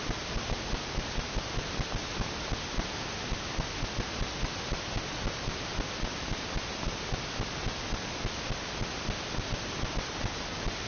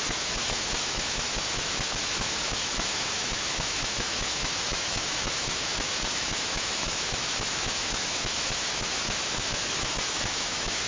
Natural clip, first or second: first